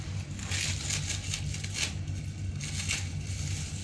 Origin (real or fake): real